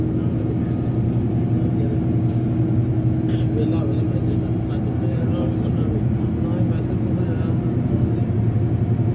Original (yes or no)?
yes